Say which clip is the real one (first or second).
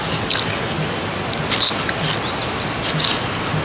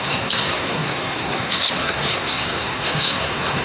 first